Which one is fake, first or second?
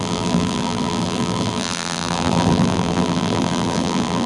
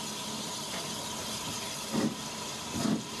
first